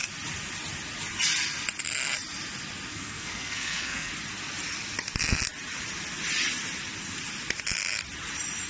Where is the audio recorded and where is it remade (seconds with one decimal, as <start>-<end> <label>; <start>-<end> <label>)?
0.0-2.9 recorded; 2.9-4.1 remade; 4.1-8.7 recorded

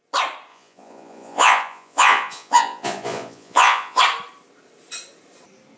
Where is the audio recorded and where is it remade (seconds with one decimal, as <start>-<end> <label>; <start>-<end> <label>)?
0.0-0.5 recorded; 0.5-4.0 remade; 4.0-5.8 recorded